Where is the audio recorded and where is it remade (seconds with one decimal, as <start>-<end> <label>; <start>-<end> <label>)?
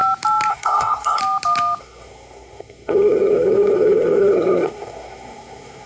0.0-0.5 recorded; 0.5-1.2 remade; 1.2-1.8 recorded; 1.8-5.9 remade